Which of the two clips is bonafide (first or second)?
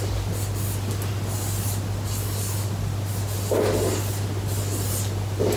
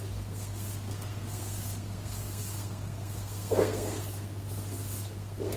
first